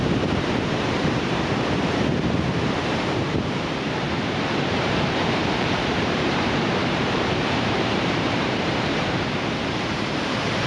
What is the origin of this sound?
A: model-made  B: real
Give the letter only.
A